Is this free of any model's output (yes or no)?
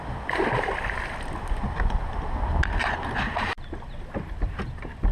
yes